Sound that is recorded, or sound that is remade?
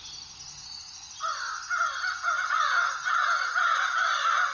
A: recorded